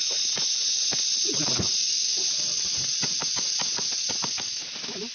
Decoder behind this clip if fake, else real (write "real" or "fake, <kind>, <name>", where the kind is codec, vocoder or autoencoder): real